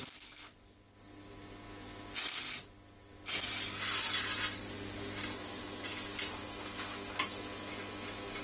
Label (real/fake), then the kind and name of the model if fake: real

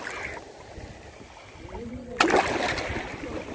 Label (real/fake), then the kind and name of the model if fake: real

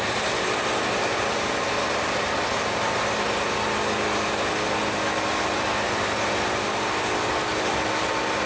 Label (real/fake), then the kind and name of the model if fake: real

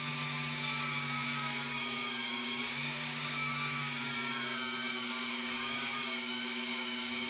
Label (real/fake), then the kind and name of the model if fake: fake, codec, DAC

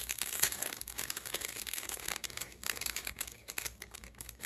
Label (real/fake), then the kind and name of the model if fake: fake, codec, DAC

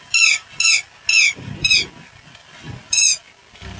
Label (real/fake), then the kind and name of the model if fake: real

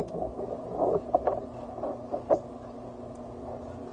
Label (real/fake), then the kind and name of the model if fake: real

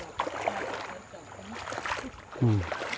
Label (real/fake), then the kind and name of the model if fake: real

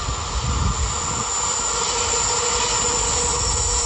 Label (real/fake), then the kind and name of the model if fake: real